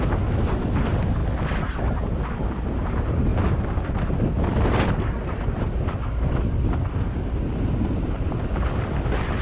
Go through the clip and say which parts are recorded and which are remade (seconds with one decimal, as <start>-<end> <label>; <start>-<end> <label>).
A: 0.0-9.4 recorded